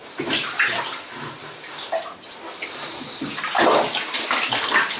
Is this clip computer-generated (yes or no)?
no